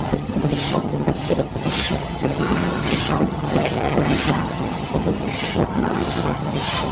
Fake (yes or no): yes